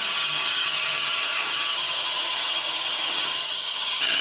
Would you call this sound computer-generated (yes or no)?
yes